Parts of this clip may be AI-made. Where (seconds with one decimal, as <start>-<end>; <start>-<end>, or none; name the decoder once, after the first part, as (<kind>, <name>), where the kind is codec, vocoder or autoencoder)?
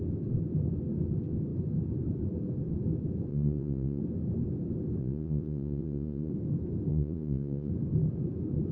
3.3-4.0 (vocoder, Vocos); 5.0-6.3; 6.9-7.7